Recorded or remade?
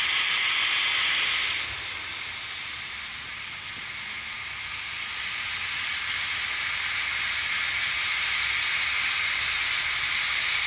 recorded